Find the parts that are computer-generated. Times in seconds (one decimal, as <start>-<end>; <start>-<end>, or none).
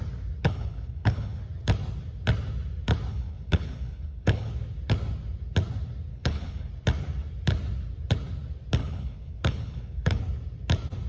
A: 0.4-1.4; 3.1-4.5; 6.1-6.7; 8.8-10.2